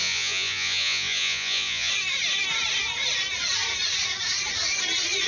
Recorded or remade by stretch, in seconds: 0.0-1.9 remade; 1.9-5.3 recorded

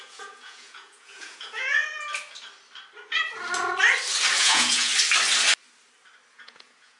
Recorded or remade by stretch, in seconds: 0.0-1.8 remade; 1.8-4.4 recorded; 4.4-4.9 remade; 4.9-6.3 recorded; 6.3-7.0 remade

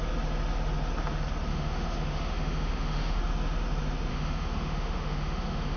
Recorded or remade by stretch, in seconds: 0.0-1.5 recorded; 1.5-3.2 remade; 3.2-4.1 recorded; 4.1-5.8 remade

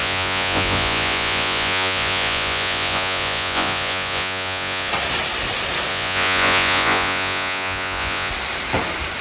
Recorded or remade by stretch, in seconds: 0.0-4.9 remade; 4.9-5.9 recorded; 5.9-8.3 remade; 8.3-9.2 recorded